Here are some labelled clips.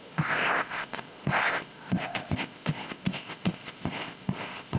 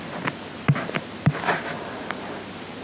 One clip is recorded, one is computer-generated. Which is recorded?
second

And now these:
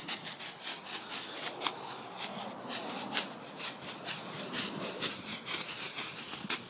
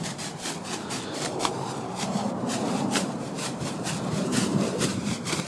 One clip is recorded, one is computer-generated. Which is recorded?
first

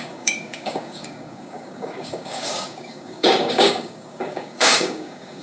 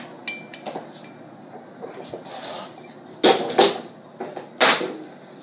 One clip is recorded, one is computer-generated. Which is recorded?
second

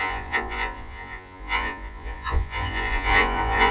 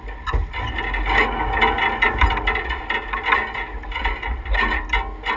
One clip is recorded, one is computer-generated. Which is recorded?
second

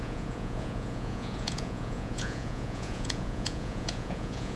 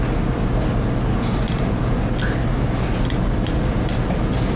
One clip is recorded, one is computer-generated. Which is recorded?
second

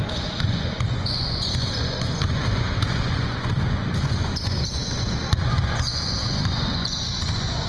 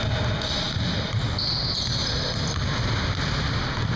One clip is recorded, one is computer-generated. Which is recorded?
second